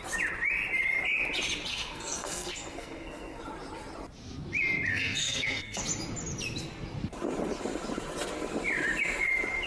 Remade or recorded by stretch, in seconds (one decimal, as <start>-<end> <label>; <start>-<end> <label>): 0.0-1.7 recorded; 1.7-3.4 remade; 3.4-4.9 recorded; 4.9-5.8 remade; 5.8-9.7 recorded